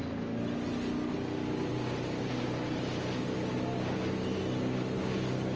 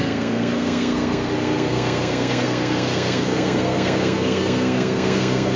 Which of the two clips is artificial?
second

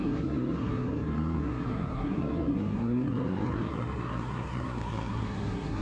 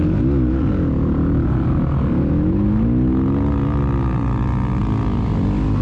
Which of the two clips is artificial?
first